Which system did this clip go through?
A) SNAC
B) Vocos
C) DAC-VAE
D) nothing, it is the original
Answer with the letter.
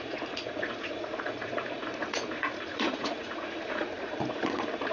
B